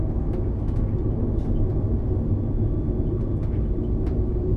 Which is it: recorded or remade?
recorded